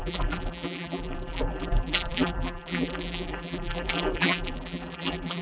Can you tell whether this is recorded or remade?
remade